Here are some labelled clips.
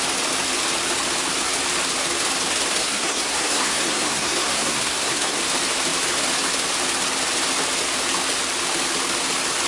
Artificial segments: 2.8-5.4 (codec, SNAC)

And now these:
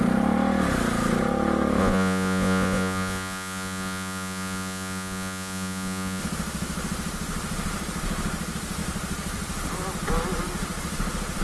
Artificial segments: 1.8-6.2 (vocoder, Vocos)

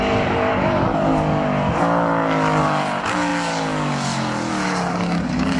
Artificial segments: 0.0-5.6 (codec, DAC)

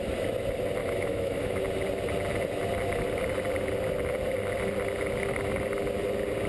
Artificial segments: 0.8-1.6 (autoencoder, DAC-VAE)